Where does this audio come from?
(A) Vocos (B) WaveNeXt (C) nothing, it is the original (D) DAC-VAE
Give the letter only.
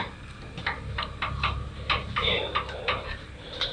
C